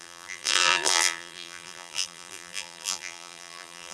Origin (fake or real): fake